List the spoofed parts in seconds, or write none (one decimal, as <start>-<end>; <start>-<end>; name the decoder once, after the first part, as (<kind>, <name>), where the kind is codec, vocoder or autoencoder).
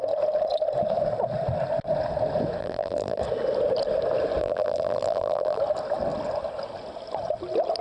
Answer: 2.6-3.2 (vocoder, BigVGAN v2); 4.4-5.6